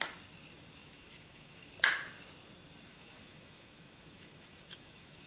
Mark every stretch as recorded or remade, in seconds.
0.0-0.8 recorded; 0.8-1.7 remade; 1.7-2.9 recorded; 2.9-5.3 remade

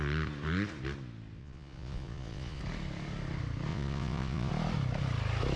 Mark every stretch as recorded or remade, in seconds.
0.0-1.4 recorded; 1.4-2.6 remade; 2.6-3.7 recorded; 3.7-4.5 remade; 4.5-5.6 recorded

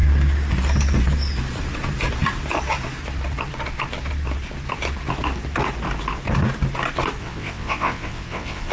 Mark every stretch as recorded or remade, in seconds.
0.0-7.2 recorded; 7.2-8.7 remade

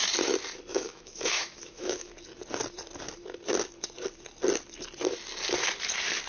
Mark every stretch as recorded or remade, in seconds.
0.0-0.7 recorded; 0.7-2.1 remade; 2.1-6.3 recorded

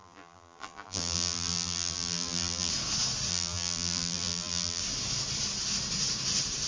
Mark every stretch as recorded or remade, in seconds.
0.0-2.7 remade; 2.7-3.3 recorded; 3.3-4.8 remade; 4.8-6.7 recorded

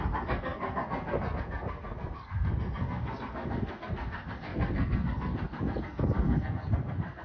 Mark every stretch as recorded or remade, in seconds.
0.0-7.2 remade